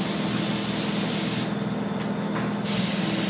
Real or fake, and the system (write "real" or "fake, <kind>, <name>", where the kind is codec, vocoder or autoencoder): real